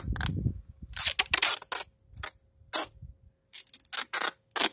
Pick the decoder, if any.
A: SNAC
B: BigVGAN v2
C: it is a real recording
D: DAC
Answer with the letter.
C